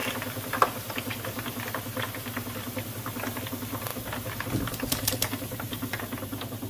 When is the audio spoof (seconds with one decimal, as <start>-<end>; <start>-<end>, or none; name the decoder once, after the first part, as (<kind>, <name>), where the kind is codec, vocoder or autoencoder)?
none